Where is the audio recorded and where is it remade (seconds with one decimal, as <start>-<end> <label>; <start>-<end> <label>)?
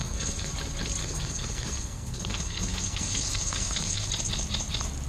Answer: 0.0-0.5 remade; 0.5-1.0 recorded; 1.0-4.1 remade; 4.1-5.1 recorded